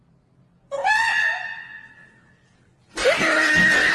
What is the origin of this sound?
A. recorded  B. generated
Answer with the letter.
A